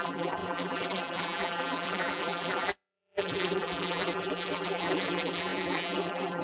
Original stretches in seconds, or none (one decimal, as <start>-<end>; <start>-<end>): none